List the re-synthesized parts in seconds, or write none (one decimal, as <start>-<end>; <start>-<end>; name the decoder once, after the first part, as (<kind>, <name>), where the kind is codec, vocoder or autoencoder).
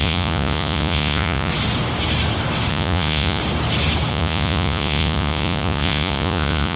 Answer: 0.0-1.5 (vocoder, Vocos); 2.7-3.4; 4.1-6.8